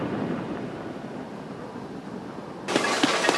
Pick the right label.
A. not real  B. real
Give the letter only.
B